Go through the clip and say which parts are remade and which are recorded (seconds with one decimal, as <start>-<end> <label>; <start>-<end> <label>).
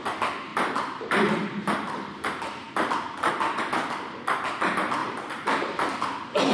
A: 0.0-0.5 recorded; 0.5-3.3 remade; 3.3-5.0 recorded; 5.0-6.5 remade